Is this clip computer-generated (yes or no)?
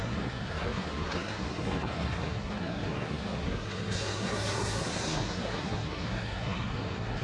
yes